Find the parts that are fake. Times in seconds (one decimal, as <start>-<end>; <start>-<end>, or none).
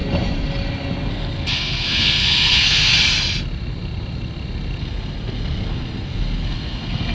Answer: 1.1-2.9; 4.8-7.1